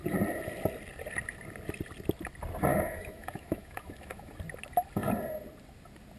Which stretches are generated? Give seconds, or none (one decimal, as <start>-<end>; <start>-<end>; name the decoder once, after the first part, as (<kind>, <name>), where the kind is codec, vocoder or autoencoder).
2.7-4.3 (autoencoder, DAC-VAE)